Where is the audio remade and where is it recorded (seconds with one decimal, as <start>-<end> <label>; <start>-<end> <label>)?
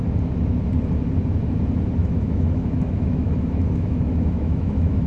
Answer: 0.0-2.0 recorded; 2.0-5.1 remade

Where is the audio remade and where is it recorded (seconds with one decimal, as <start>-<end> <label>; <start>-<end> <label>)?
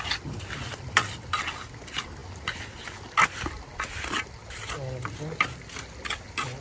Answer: 0.0-6.6 recorded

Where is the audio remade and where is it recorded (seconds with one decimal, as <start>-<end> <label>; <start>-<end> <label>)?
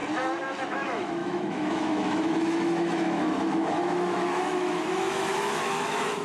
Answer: 0.0-0.7 recorded; 0.7-6.2 remade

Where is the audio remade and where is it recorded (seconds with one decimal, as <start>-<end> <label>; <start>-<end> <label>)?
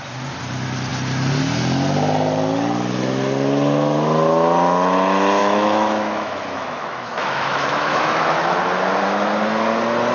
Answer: 0.0-5.4 recorded; 5.4-8.6 remade; 8.6-10.1 recorded